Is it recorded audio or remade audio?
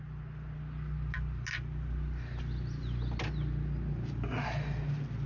recorded